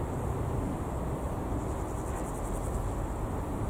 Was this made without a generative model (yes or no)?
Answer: yes